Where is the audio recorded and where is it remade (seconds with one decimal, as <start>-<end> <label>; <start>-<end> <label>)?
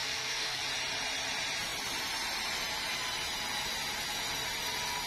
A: 0.0-0.6 remade; 0.6-5.1 recorded